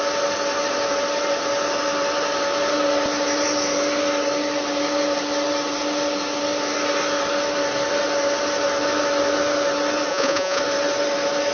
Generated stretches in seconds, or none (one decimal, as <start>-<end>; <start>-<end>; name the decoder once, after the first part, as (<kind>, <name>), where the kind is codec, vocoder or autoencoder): 10.1-10.6 (vocoder, Vocos)